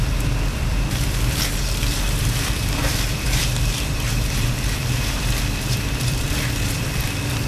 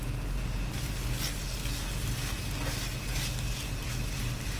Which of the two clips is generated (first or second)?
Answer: first